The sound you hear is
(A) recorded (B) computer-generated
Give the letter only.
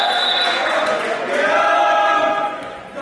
B